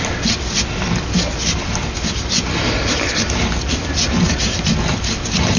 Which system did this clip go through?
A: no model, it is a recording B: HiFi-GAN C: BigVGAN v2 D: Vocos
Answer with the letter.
A